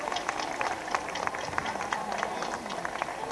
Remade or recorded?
recorded